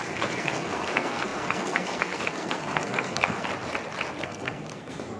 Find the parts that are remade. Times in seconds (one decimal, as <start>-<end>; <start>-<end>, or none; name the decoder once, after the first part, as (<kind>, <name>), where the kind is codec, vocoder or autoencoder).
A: 0.0-3.5 (codec, SNAC); 4.2-5.2

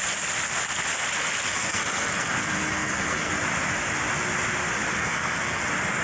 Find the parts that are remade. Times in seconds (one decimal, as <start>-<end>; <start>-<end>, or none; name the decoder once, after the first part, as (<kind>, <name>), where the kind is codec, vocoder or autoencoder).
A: 1.5-3.3 (codec, SNAC); 4.9-5.6

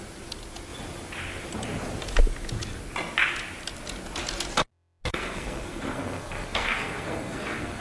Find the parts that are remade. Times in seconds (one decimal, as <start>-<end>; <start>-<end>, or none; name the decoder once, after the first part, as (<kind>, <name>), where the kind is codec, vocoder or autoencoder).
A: 5.1-7.8 (codec, SNAC)

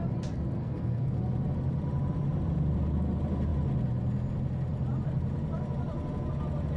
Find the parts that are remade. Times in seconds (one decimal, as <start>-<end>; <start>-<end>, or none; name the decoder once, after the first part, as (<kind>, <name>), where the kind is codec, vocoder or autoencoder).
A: 0.6-1.2 (codec, SNAC)